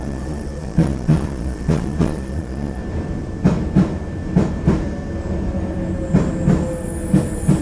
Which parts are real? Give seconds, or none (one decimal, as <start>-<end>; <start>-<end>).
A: 2.8-7.6